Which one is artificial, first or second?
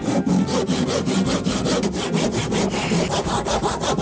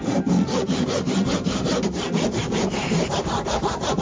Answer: second